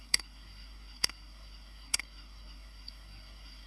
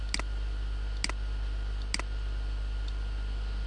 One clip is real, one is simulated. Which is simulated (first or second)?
first